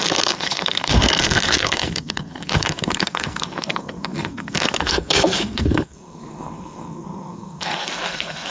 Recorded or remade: remade